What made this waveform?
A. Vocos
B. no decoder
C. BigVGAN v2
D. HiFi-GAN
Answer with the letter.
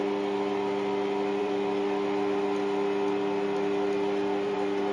B